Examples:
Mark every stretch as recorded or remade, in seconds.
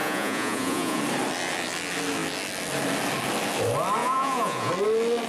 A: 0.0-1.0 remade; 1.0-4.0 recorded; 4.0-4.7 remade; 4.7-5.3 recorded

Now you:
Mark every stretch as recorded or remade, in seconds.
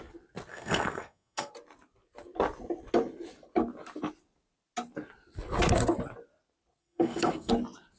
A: 0.0-0.5 recorded; 0.5-1.5 remade; 1.5-6.8 recorded; 6.8-7.5 remade; 7.5-8.0 recorded